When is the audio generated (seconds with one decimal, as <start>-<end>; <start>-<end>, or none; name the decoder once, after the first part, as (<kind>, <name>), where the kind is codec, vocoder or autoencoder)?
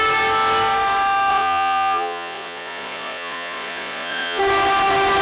1.3-4.4 (vocoder, Vocos)